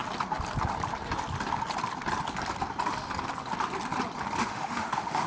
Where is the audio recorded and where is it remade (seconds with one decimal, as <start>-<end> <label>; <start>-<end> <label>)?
0.0-4.4 recorded; 4.4-5.3 remade